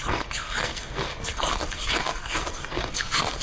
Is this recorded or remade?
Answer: remade